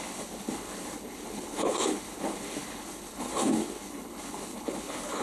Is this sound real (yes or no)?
no